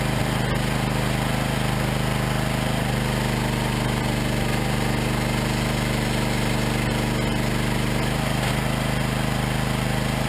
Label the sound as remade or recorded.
recorded